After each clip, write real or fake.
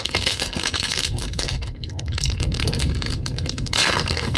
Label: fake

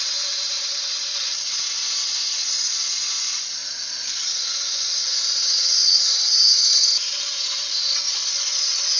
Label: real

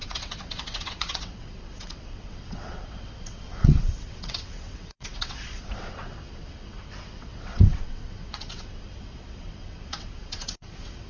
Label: fake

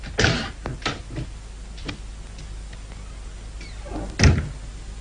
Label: real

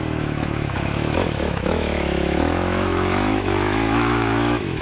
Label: fake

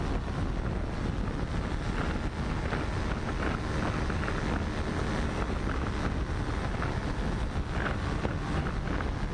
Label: real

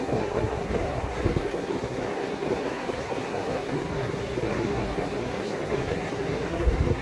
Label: fake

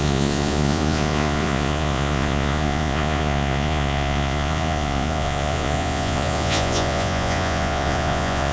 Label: fake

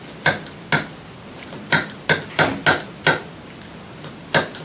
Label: real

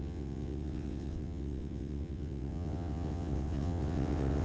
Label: fake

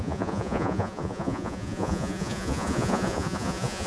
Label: fake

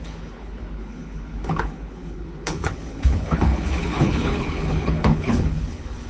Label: fake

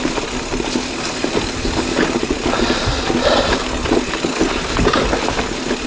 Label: real